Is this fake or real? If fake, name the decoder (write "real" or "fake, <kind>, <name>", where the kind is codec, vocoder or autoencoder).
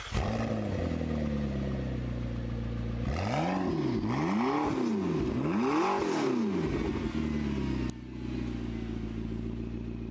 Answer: real